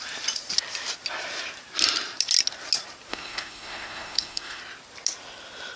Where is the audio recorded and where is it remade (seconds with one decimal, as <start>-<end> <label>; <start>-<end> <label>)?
0.0-3.1 recorded; 3.1-4.6 remade; 4.6-5.8 recorded